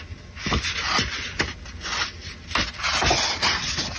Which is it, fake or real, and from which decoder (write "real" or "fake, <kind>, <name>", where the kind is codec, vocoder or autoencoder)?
real